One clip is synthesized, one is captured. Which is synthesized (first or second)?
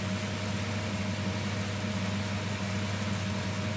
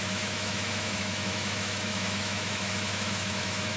second